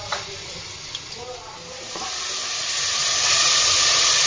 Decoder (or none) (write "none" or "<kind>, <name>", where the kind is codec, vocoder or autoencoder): none